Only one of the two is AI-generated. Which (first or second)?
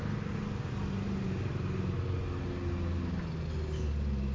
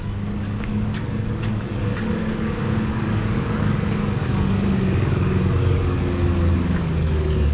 second